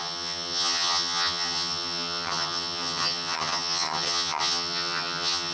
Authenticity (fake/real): fake